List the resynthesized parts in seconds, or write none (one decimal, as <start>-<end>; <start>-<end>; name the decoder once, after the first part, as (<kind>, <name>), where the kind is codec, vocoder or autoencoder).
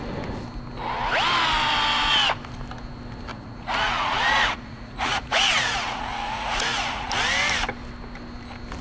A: 3.3-7.1 (vocoder, Vocos)